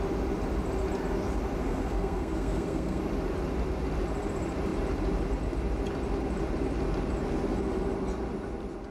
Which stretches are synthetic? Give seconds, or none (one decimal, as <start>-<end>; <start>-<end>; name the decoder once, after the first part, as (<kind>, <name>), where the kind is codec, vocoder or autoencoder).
1.6-3.0 (codec, SNAC)